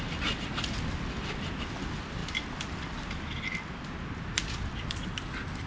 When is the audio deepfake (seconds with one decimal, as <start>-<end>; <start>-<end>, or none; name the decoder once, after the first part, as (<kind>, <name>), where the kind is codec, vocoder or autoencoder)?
none